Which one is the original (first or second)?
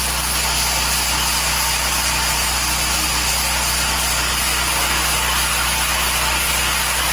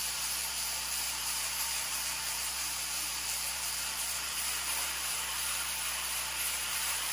first